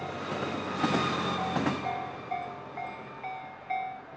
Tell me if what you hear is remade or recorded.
recorded